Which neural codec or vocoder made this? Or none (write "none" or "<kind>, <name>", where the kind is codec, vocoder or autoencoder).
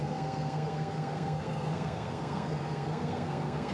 codec, SNAC